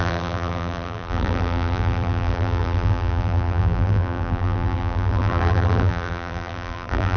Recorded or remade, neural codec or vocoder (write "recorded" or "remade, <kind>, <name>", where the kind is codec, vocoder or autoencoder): remade, vocoder, BigVGAN v2